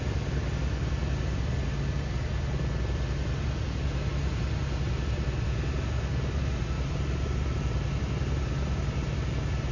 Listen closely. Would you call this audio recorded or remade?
recorded